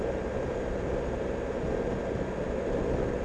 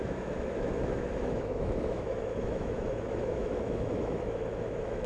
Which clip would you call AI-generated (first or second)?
second